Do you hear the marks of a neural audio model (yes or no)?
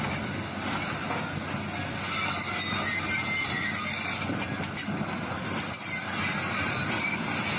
no